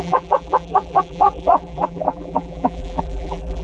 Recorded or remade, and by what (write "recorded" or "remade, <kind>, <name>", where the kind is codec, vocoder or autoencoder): remade, vocoder, BigVGAN v2